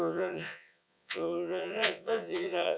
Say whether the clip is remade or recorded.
remade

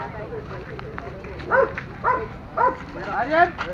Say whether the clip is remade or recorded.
recorded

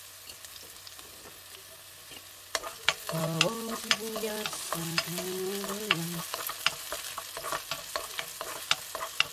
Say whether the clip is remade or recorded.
recorded